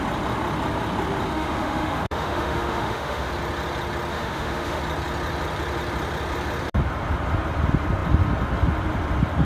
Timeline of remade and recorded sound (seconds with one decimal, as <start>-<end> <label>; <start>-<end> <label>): 0.0-1.3 recorded; 1.3-3.3 remade; 3.3-4.1 recorded; 4.1-4.8 remade; 4.8-9.4 recorded